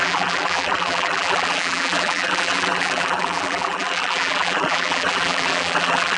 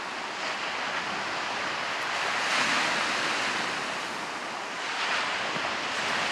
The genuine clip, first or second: second